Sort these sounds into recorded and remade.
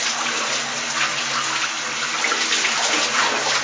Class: recorded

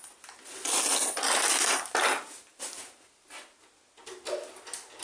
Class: recorded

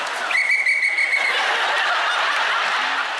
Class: recorded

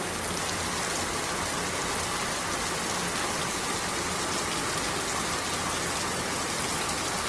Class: recorded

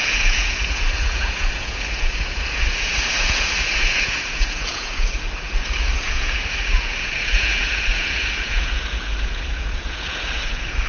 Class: remade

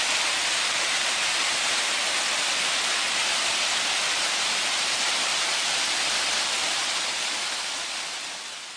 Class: recorded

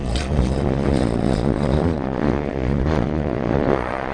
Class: remade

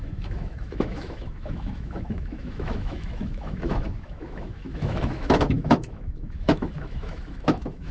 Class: remade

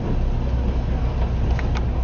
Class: recorded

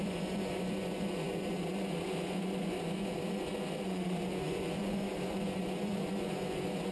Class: remade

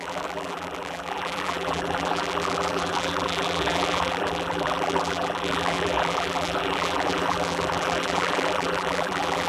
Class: remade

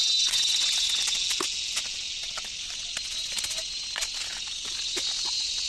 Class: recorded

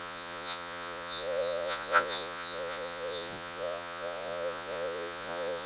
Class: remade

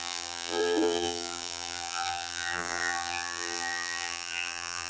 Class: remade